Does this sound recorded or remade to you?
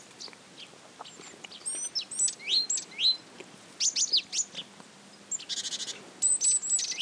recorded